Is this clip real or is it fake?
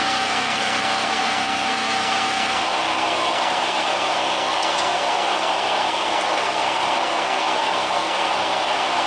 fake